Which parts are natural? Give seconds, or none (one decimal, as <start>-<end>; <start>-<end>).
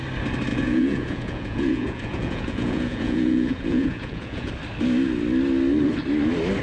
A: 0.0-0.5; 4.5-6.6